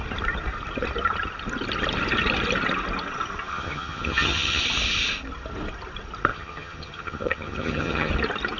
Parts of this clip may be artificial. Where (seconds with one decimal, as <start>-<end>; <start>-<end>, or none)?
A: 3.5-4.6; 6.3-8.1